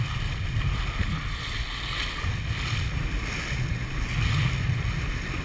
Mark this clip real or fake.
real